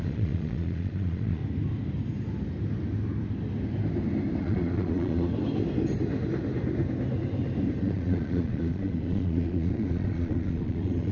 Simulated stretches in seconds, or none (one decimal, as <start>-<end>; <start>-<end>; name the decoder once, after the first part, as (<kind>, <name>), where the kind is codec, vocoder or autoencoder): 0.0-1.4 (vocoder, Vocos); 4.4-5.3; 7.8-11.1